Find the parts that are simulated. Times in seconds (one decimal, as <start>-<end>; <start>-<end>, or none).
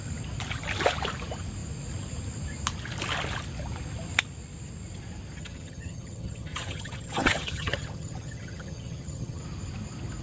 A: 5.4-9.4